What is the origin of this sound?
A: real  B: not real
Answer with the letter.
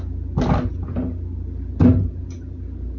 A